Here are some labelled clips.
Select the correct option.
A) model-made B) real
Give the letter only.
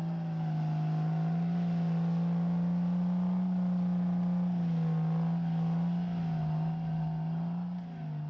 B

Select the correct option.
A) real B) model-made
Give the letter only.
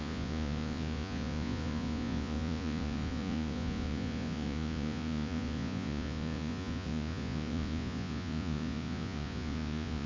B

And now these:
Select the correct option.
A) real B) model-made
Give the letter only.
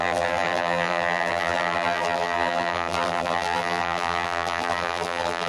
B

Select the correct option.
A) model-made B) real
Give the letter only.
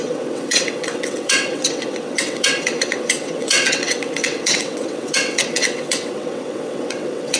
A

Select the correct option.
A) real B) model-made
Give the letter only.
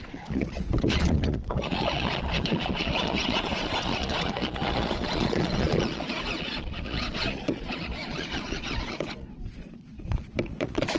B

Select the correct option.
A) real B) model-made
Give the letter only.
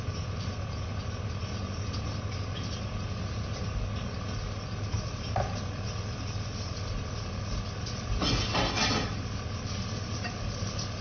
A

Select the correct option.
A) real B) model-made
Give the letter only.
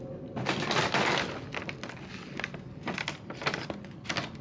A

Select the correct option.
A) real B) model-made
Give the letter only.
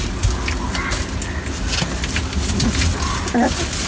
A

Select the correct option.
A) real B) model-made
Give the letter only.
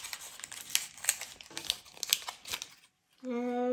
A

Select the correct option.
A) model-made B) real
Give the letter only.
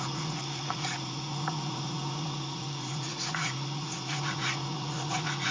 A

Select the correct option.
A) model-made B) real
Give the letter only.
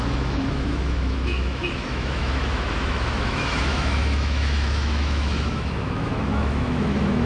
A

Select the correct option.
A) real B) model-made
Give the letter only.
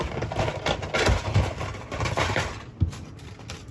B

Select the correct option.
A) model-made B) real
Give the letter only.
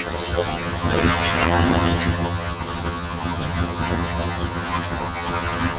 A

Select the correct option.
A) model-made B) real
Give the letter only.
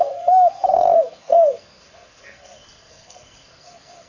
A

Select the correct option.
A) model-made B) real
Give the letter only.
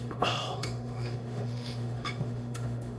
A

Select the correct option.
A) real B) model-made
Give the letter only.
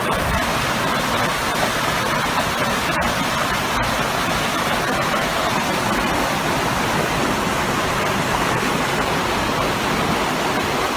A